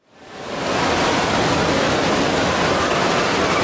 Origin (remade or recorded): recorded